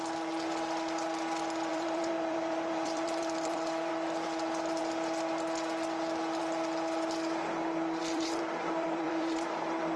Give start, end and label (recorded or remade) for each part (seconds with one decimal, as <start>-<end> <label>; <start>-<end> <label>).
0.0-1.7 recorded; 1.7-3.9 remade; 3.9-8.0 recorded; 8.0-9.6 remade; 9.6-10.0 recorded